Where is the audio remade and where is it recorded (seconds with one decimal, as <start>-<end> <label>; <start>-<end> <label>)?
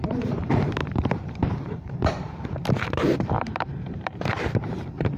0.0-5.2 remade